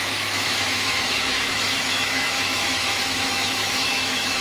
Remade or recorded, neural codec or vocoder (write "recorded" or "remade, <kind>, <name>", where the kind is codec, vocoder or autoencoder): remade, autoencoder, DAC-VAE